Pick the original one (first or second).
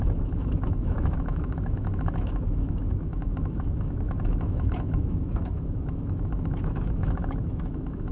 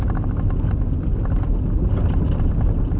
second